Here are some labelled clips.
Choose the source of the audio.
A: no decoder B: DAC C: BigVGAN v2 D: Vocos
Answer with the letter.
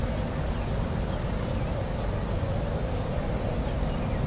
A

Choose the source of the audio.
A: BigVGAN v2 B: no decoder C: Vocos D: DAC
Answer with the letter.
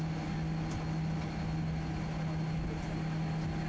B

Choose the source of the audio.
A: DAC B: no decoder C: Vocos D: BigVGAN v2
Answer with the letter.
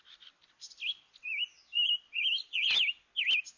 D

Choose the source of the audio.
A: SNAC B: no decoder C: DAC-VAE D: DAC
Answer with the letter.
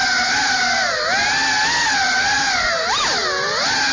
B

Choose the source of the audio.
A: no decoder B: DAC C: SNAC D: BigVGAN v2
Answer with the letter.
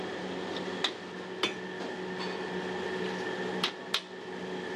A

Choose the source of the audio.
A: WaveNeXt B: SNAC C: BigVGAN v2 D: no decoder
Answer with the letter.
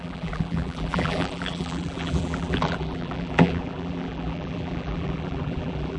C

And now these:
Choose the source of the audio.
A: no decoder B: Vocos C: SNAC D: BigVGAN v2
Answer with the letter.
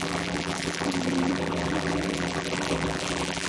D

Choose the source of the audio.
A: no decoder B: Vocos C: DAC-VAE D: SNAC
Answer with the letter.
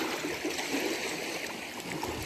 A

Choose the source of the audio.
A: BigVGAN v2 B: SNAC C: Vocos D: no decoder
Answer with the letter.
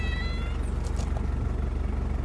D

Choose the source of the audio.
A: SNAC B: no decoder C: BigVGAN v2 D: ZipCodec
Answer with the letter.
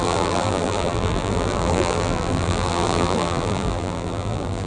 C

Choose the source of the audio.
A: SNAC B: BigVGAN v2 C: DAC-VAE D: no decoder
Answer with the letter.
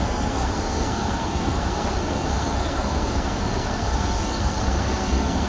A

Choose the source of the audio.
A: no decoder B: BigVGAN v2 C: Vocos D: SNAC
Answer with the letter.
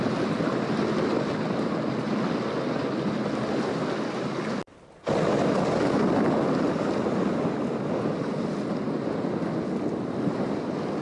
A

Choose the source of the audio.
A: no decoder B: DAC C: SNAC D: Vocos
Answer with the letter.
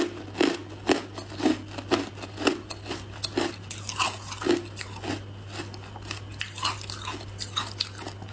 A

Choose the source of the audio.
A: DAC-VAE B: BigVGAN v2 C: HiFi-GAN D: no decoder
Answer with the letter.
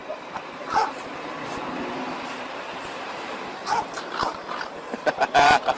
B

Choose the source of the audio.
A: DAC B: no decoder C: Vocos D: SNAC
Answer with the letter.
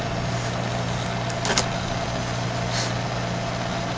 B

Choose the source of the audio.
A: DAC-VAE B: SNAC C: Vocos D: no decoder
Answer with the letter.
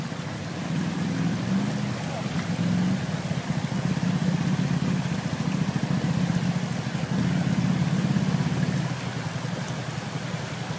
D